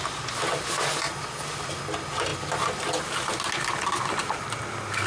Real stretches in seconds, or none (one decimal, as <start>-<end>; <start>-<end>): 0.0-5.1